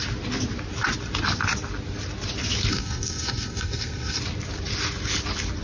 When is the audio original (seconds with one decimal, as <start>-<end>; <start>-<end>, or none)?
0.0-2.7; 4.2-5.6

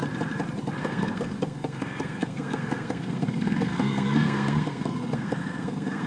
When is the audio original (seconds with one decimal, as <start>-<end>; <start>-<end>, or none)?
0.0-0.8

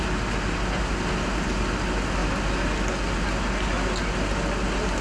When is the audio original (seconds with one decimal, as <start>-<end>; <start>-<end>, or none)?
0.0-5.0

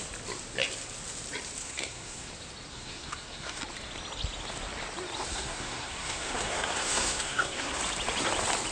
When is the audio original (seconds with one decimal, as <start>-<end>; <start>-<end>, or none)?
0.0-1.6; 2.3-2.7; 3.6-5.3; 7.8-8.7

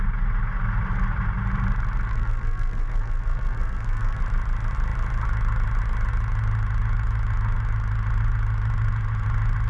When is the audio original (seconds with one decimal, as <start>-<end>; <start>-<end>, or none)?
0.0-2.1; 4.2-9.7

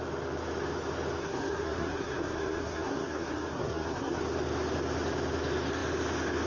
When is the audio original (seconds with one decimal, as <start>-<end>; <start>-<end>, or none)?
0.0-1.2; 4.2-6.5